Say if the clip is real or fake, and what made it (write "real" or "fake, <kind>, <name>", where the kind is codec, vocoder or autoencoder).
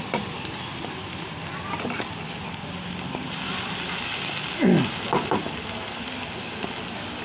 real